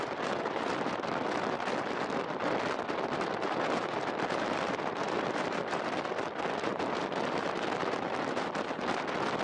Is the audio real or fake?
real